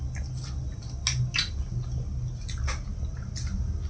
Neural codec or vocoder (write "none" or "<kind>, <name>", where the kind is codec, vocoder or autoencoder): none